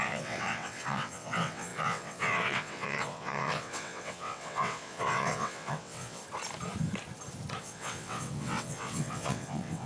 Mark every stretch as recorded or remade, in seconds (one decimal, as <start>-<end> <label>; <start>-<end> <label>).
0.0-6.2 remade; 6.2-7.6 recorded; 7.6-9.9 remade